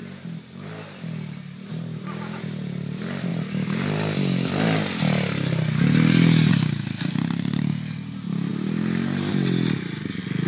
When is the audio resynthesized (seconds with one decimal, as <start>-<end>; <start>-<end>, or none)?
none